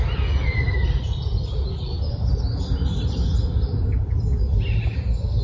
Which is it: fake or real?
real